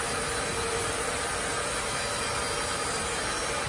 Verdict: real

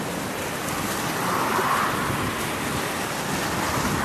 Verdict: real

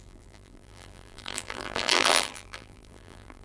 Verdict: fake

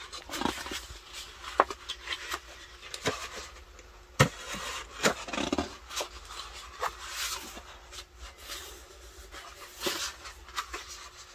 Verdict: real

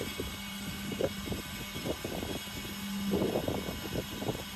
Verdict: real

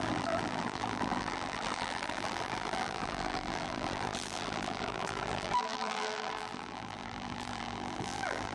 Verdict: fake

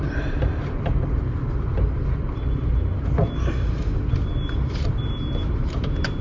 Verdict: fake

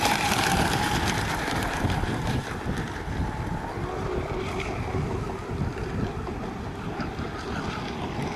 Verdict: real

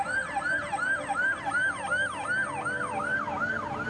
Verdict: fake